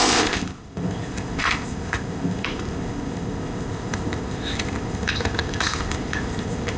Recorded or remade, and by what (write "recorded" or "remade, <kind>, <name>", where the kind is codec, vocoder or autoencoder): remade, codec, ZipCodec